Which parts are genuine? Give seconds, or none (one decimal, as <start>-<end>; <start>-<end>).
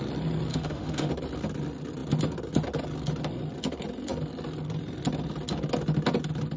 0.0-0.5; 1.1-6.6